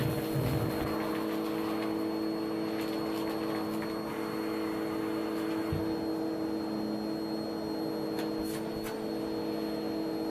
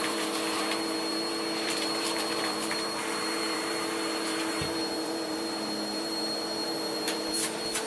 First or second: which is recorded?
first